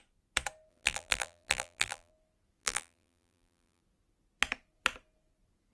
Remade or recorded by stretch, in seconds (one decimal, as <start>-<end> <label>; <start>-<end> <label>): 0.0-0.7 recorded; 0.7-2.1 remade; 2.1-2.6 recorded; 2.6-3.8 remade; 3.8-5.7 recorded